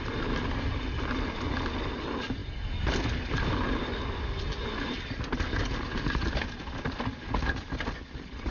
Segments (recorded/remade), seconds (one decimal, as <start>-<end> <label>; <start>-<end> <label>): 0.0-8.5 recorded